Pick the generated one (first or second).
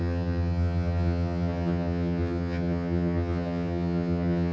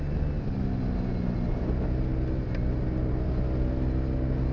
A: first